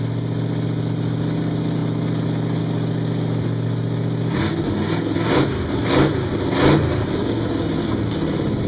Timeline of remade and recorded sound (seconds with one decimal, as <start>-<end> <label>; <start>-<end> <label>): 0.0-8.7 recorded